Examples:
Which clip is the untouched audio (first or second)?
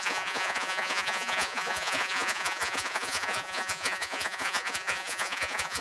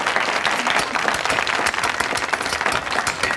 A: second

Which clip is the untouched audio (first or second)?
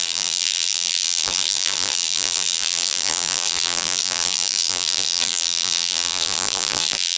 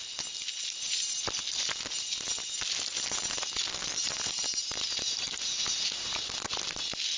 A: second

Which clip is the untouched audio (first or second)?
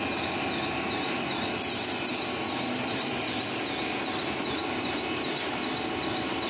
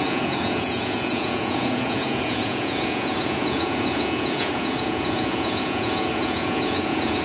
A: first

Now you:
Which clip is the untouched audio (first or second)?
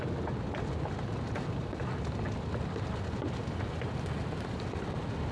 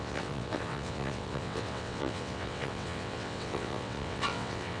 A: first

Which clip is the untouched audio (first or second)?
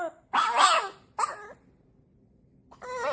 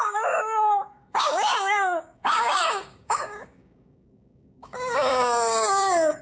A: first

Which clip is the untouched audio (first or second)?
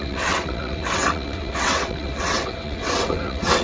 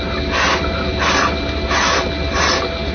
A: second